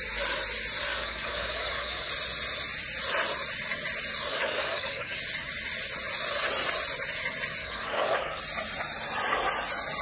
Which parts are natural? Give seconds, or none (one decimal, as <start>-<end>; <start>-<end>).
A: 0.0-0.9; 2.1-4.3; 5.2-7.6; 8.4-10.0